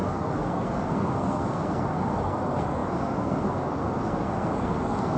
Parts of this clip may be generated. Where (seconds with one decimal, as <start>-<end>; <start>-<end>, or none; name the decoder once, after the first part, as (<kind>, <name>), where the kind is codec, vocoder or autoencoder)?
0.0-5.2 (codec, SNAC)